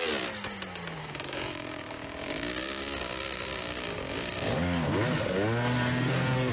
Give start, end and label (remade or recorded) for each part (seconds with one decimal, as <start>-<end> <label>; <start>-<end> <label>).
0.0-1.0 recorded; 1.0-4.9 remade; 4.9-6.5 recorded